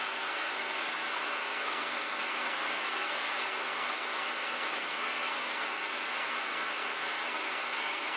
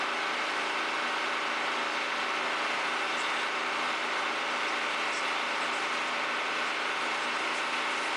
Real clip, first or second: second